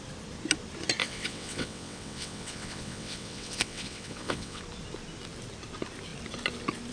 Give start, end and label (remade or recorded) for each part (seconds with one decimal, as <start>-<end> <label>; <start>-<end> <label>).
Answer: 0.0-1.0 recorded; 1.0-4.6 remade; 4.6-6.9 recorded